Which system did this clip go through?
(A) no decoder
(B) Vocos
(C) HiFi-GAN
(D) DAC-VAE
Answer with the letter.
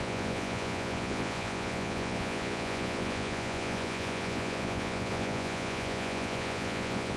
B